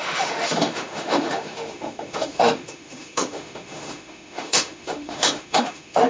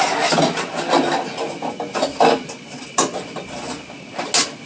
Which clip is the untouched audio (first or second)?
second